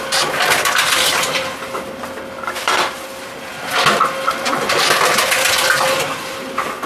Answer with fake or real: real